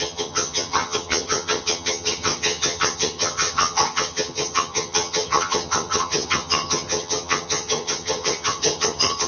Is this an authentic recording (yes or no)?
no